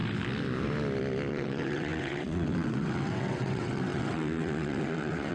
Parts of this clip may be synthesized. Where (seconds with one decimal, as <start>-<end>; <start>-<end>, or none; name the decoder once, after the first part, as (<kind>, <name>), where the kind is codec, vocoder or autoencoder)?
1.3-5.3 (vocoder, WaveNeXt)